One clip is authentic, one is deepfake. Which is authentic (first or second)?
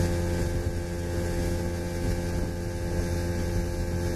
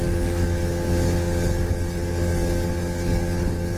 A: first